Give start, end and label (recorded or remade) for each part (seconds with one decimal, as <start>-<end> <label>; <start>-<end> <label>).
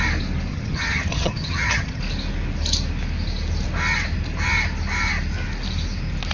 0.0-0.5 recorded; 0.5-2.0 remade; 2.0-6.3 recorded